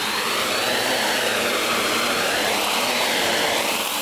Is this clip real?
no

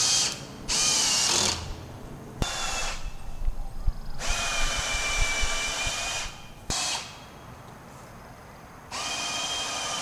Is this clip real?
no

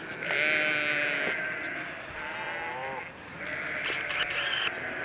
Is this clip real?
yes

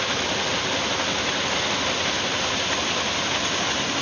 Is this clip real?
yes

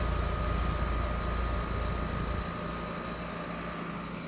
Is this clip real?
yes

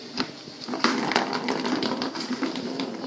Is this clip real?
yes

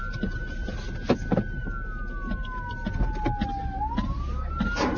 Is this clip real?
yes